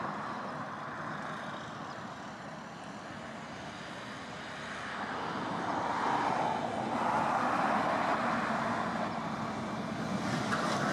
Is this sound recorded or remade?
recorded